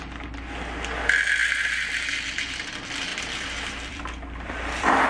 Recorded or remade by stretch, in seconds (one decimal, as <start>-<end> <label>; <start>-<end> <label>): 0.0-3.1 recorded; 3.1-5.1 remade